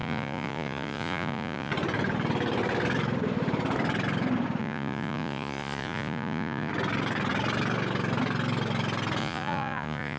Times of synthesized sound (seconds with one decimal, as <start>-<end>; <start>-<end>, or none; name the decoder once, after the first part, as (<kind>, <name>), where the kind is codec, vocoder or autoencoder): 0.0-1.7 (vocoder, Vocos); 4.6-6.7; 9.2-10.2